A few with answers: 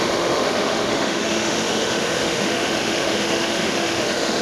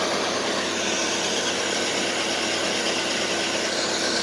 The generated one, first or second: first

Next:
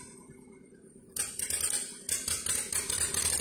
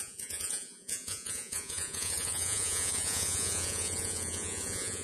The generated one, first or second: second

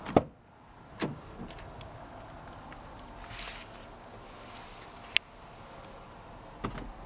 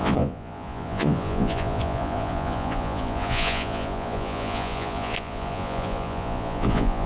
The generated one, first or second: second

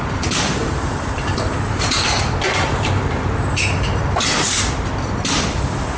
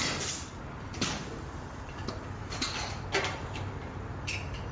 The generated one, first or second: first